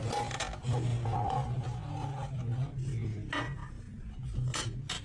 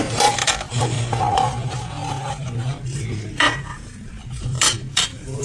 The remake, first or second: second